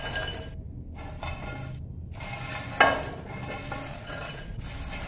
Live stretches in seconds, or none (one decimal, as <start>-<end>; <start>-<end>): 0.0-3.9; 4.6-5.1